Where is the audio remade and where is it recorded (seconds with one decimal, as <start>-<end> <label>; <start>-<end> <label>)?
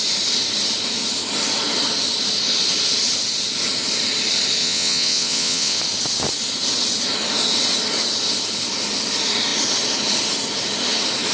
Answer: 0.0-4.6 recorded; 4.6-5.8 remade; 5.8-11.3 recorded